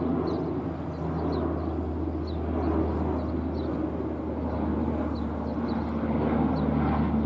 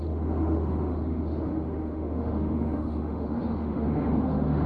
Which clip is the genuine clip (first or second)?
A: first